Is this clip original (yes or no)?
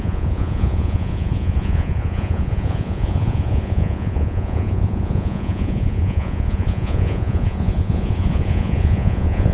no